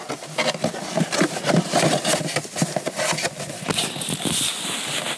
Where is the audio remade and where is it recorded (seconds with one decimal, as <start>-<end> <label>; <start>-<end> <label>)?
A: 0.0-5.2 recorded